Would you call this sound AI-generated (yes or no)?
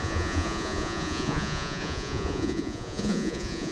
yes